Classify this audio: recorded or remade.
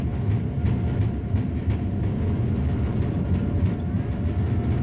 recorded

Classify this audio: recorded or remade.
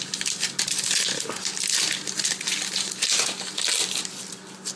recorded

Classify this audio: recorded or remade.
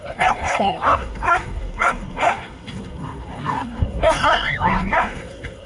remade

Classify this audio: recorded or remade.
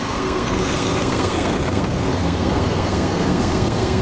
remade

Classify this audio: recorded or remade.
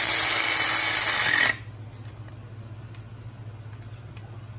recorded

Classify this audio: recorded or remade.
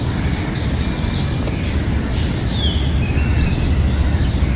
recorded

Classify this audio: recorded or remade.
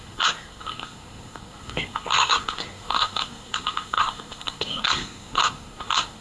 remade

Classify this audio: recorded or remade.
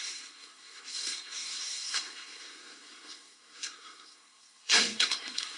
remade